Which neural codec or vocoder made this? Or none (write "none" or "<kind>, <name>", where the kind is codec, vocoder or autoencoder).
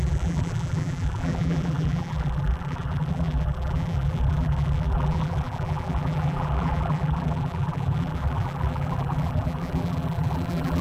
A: vocoder, BigVGAN v2